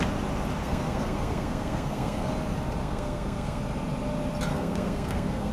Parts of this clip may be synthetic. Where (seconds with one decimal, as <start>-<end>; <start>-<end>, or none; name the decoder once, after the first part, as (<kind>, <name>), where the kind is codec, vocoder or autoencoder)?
0.6-2.3 (codec, SNAC); 2.8-3.6; 4.5-5.5